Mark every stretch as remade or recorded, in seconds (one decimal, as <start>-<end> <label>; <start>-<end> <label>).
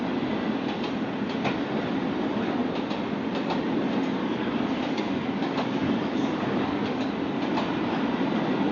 0.0-4.2 recorded; 4.2-7.1 remade; 7.1-8.7 recorded